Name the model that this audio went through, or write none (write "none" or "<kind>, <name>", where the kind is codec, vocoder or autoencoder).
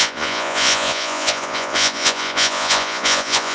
vocoder, Vocos